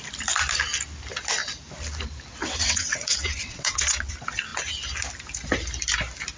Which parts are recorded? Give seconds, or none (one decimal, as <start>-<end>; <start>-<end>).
0.0-2.4; 4.1-6.4

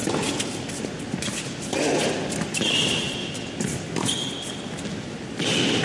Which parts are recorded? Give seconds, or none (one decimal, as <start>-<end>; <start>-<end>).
0.0-5.8

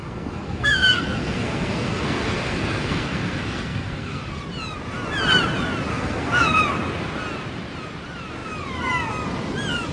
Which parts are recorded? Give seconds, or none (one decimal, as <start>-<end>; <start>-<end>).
4.2-5.9; 6.6-9.9

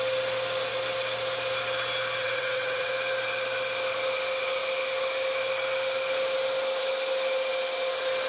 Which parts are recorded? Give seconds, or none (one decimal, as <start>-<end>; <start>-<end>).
0.0-2.2; 2.9-8.3

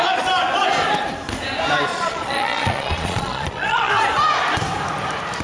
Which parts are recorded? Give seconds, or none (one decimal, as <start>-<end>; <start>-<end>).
0.0-1.9; 3.9-5.4

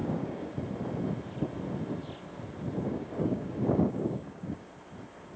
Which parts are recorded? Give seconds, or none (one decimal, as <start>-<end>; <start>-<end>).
0.5-2.9; 4.7-5.4

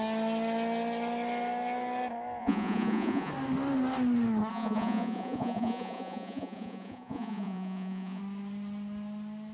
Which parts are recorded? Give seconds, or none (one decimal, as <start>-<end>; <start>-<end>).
0.0-2.4; 3.3-4.5; 8.2-9.5

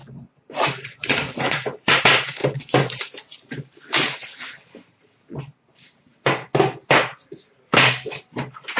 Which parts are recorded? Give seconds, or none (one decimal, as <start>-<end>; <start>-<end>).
2.0-2.4; 5.4-8.8